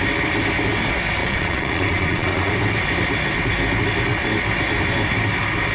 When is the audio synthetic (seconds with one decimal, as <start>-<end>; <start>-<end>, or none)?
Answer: 1.2-2.5